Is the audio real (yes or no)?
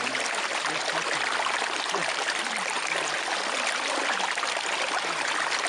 no